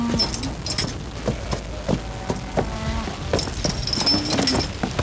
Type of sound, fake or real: real